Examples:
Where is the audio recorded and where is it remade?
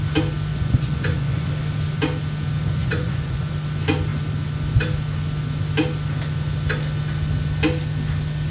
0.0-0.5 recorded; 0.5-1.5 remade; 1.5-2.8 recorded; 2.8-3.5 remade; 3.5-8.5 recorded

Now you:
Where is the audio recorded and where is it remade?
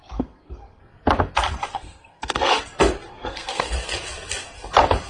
0.0-0.8 remade; 0.8-1.7 recorded; 1.7-2.6 remade; 2.6-3.1 recorded; 3.1-3.7 remade; 3.7-5.1 recorded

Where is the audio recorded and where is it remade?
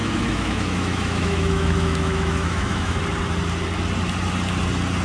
0.0-3.0 remade; 3.0-5.0 recorded